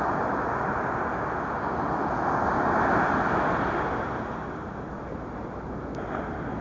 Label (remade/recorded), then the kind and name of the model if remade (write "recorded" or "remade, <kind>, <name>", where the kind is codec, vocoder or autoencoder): recorded